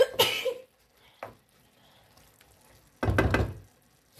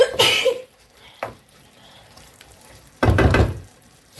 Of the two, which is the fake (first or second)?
second